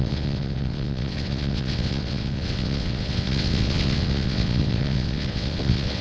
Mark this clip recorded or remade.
remade